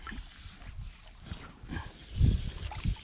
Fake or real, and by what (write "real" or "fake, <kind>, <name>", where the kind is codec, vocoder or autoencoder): real